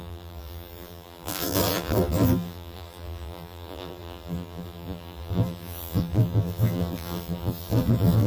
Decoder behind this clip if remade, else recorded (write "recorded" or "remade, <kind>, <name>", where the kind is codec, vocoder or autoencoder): remade, vocoder, BigVGAN v2